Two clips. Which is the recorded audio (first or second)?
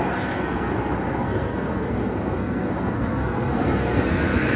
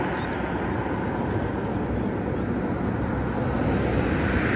second